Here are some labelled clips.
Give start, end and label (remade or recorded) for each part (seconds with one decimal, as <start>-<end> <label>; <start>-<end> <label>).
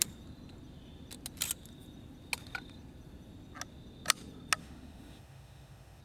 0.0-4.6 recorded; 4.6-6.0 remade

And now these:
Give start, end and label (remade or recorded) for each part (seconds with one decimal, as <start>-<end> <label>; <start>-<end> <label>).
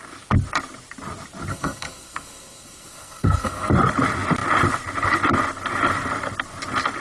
0.0-1.5 recorded; 1.5-3.7 remade; 3.7-7.0 recorded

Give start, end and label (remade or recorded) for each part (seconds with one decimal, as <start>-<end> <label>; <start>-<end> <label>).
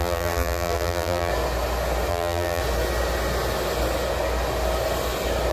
0.0-1.3 remade; 1.3-2.1 recorded; 2.1-2.6 remade; 2.6-5.5 recorded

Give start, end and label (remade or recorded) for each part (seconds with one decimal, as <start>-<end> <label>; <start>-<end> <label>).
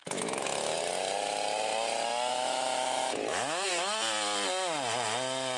0.0-0.8 remade; 0.8-2.3 recorded; 2.3-3.7 remade; 3.7-5.6 recorded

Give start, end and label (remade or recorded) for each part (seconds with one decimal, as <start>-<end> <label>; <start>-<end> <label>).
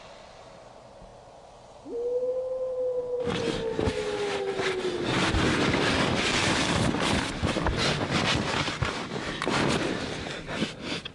0.0-11.1 recorded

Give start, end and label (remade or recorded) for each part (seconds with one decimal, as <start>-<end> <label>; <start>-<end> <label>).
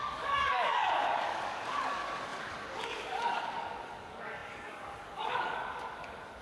0.0-6.4 remade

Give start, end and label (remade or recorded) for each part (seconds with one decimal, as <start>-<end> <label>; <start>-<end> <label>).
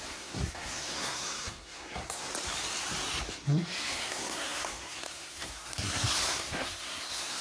0.0-2.3 remade; 2.3-3.3 recorded; 3.3-7.4 remade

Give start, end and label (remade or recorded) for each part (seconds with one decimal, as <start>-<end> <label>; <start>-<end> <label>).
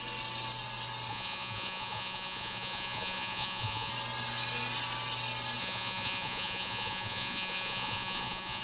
0.0-1.1 recorded; 1.1-3.9 remade; 3.9-5.6 recorded; 5.6-8.6 remade